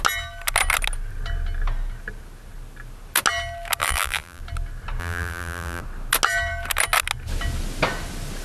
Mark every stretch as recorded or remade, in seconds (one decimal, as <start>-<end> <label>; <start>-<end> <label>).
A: 0.0-3.8 recorded; 3.8-4.4 remade; 4.4-5.0 recorded; 5.0-5.8 remade; 5.8-8.4 recorded